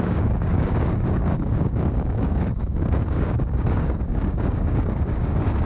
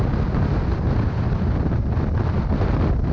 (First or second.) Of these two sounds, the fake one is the first